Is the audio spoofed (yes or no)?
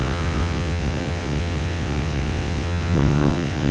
yes